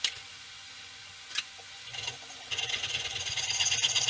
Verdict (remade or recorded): remade